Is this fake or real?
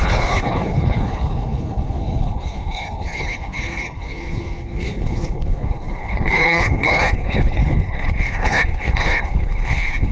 fake